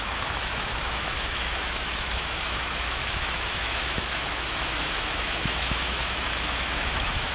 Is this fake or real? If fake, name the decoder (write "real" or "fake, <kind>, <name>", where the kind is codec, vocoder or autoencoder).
fake, autoencoder, DAC-VAE